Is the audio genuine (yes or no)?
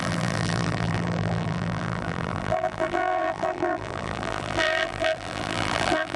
no